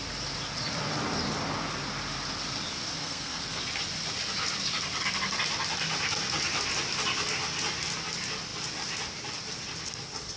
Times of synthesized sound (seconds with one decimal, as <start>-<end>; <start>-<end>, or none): 3.0-3.6